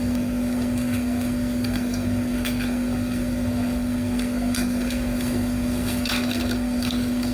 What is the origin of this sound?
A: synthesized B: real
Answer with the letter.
A